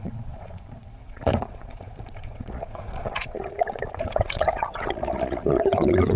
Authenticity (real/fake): fake